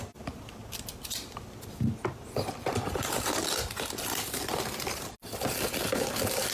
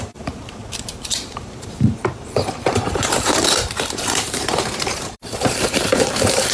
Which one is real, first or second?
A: first